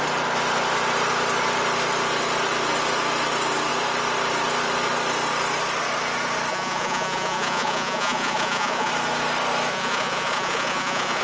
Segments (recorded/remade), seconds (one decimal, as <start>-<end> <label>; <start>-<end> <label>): 0.0-6.5 recorded; 6.5-8.9 remade; 8.9-9.7 recorded; 9.7-11.2 remade